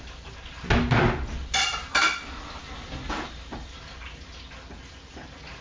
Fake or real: real